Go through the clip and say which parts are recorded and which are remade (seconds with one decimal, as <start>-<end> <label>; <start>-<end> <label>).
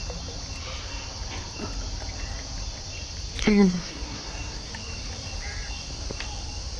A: 0.0-3.4 recorded; 3.4-4.7 remade; 4.7-6.8 recorded